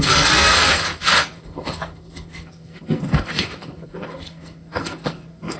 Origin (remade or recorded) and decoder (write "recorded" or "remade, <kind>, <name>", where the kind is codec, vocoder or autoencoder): remade, codec, SNAC